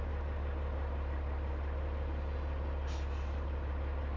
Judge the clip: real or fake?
real